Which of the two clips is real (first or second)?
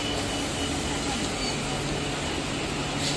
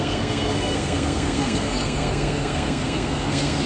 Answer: first